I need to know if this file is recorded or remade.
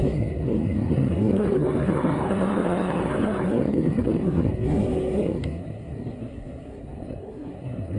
remade